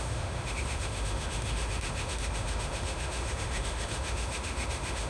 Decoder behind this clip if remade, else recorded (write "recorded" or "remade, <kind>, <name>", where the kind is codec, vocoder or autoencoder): remade, autoencoder, DAC-VAE